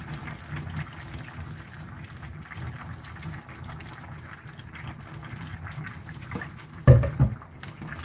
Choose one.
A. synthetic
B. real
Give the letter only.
B